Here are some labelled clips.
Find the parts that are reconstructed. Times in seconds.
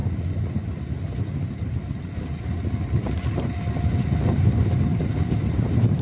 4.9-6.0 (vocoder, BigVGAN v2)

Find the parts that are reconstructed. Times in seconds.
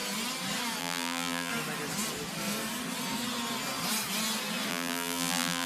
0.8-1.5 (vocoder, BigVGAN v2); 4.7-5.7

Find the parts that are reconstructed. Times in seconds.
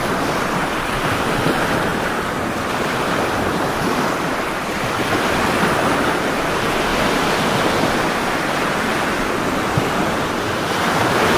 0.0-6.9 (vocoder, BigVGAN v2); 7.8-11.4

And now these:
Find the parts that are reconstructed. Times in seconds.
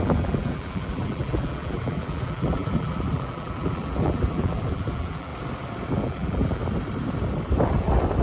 0.0-5.3 (vocoder, BigVGAN v2); 5.9-6.6